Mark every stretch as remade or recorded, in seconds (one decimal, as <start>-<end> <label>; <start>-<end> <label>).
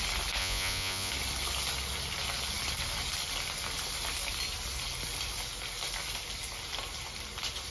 0.0-0.4 recorded; 0.4-1.1 remade; 1.1-7.7 recorded